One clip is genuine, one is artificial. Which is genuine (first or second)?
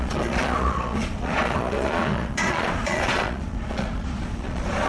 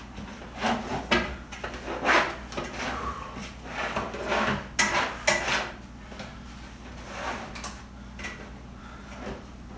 second